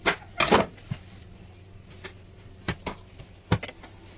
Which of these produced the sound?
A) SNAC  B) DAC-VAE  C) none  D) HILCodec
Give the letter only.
C